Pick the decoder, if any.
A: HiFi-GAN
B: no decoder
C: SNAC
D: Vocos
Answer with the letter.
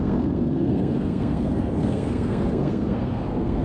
C